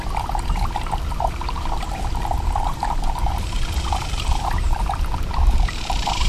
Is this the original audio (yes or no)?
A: no